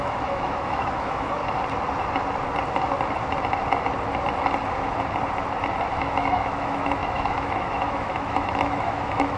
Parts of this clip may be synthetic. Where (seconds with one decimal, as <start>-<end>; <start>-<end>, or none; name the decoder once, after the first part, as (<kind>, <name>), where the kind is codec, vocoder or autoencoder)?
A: 0.0-1.4 (autoencoder, DAC-VAE); 5.9-9.4